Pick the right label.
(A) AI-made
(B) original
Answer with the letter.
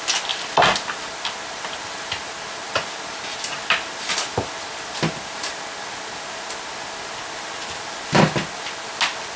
B